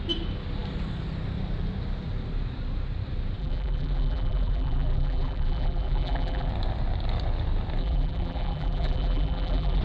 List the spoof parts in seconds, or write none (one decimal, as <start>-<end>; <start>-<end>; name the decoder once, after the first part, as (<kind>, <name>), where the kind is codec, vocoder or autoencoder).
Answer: 3.4-6.5 (vocoder, BigVGAN v2); 7.8-9.8